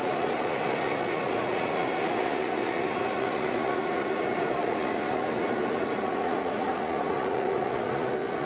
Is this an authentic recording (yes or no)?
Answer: no